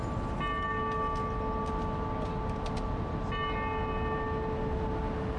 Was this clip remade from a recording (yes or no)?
no